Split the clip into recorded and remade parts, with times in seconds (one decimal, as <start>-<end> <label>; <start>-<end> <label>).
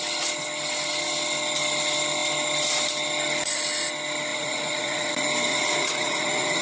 0.0-4.3 recorded; 4.3-5.1 remade; 5.1-5.5 recorded; 5.5-6.6 remade